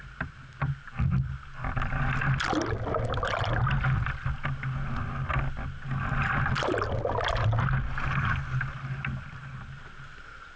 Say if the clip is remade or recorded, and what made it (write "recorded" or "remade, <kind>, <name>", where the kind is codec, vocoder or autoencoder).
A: recorded